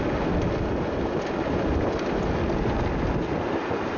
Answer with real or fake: real